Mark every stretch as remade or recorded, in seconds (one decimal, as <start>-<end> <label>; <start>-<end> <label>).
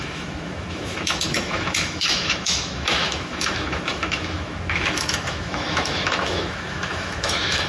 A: 0.0-7.7 remade